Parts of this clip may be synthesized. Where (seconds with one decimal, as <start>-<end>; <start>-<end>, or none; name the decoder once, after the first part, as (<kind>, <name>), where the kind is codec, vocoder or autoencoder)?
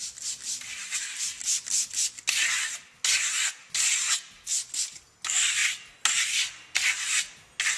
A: none